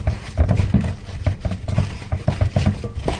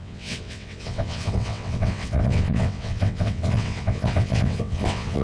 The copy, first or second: second